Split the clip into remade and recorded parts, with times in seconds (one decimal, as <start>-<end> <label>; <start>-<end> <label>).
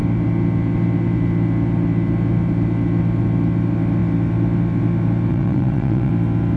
0.0-5.3 recorded; 5.3-6.1 remade; 6.1-6.6 recorded